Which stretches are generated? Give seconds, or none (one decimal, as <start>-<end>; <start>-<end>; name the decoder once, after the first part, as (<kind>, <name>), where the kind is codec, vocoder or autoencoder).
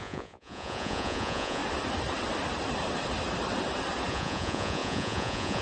0.0-1.6 (vocoder, Vocos); 4.1-5.6